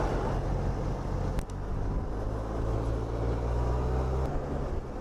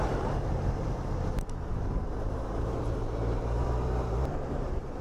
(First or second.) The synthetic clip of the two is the second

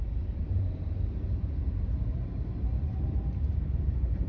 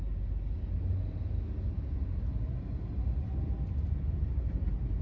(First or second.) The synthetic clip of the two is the first